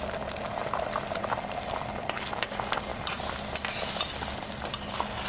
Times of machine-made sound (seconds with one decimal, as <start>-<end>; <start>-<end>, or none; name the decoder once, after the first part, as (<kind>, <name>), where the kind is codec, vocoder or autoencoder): none